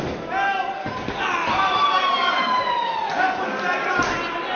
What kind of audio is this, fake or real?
real